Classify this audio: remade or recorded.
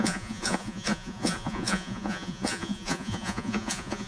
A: remade